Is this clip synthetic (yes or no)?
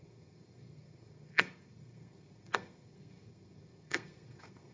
yes